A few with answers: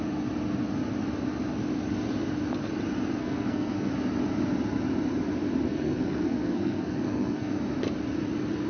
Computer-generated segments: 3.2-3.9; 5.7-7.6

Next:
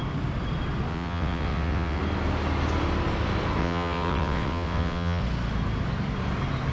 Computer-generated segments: 0.9-2.0; 3.6-5.2

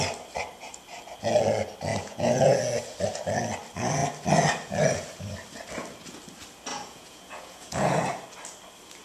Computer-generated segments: 1.9-2.6; 6.7-8.0

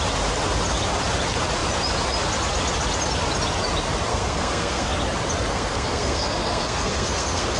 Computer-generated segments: 4.1-4.9; 5.5-7.6